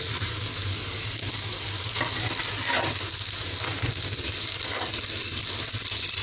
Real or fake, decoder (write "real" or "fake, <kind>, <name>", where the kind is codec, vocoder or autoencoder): real